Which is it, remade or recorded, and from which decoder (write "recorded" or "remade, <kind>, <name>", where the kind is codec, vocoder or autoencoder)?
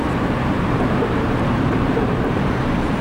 remade, vocoder, BigVGAN v2